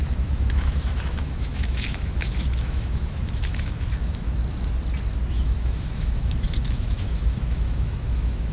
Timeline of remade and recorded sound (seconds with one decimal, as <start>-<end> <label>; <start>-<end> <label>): 0.0-4.4 remade; 4.4-5.3 recorded; 5.3-8.5 remade